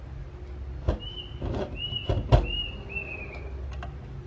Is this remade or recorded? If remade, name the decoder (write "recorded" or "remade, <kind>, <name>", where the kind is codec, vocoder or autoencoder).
recorded